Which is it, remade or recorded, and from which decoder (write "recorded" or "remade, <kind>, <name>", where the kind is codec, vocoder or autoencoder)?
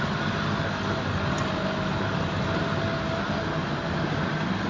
recorded